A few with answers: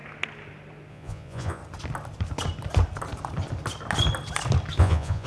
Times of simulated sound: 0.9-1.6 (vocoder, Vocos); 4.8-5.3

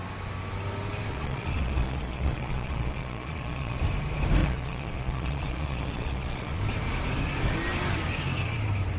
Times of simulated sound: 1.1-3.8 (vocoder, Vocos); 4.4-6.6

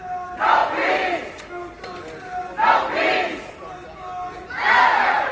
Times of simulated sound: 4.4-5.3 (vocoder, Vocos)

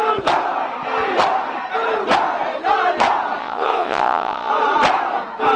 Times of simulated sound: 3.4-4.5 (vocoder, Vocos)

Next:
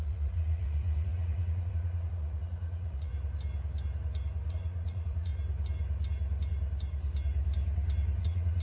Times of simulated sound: 0.0-3.1 (vocoder, Vocos); 4.5-5.3; 8.2-8.6

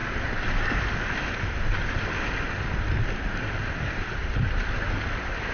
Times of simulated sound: none

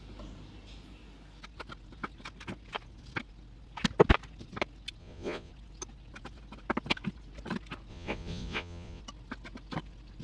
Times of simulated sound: 5.0-5.5 (vocoder, Vocos); 7.9-9.0

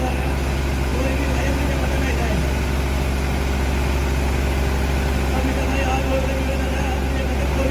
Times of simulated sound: none